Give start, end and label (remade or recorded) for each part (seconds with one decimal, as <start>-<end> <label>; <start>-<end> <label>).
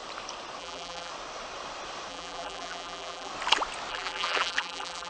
0.0-0.6 recorded; 0.6-1.1 remade; 1.1-2.1 recorded; 2.1-3.3 remade; 3.3-3.9 recorded; 3.9-5.1 remade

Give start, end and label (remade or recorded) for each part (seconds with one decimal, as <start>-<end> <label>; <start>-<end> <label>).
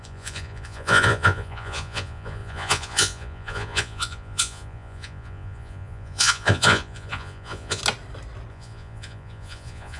0.0-7.8 remade; 7.8-8.5 recorded; 8.5-10.0 remade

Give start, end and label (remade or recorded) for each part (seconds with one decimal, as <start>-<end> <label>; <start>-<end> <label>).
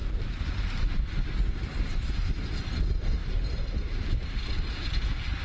0.0-0.8 remade; 0.8-3.2 recorded; 3.2-5.4 remade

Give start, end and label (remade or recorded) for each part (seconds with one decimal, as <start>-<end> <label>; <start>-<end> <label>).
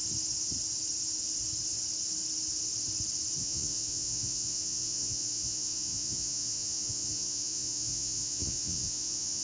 0.0-3.4 recorded; 3.4-9.4 remade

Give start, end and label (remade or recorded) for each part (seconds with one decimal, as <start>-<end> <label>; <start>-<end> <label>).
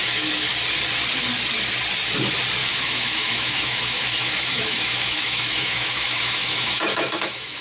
0.0-0.5 remade; 0.5-2.6 recorded; 2.6-7.6 remade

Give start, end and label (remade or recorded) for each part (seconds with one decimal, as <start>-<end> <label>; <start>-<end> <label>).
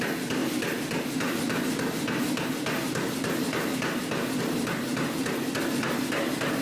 0.0-6.6 recorded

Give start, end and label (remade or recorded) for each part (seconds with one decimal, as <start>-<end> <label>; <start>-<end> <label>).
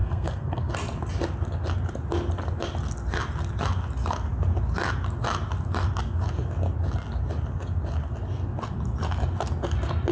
0.0-0.7 remade; 0.7-10.1 recorded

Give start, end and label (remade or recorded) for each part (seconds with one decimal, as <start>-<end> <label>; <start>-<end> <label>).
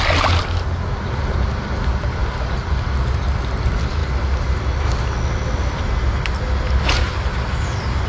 0.0-2.2 recorded; 2.2-3.2 remade; 3.2-8.1 recorded